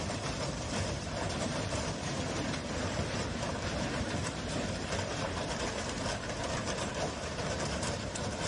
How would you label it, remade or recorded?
remade